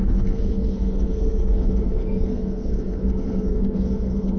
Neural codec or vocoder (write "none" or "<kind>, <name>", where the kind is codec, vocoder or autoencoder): codec, SNAC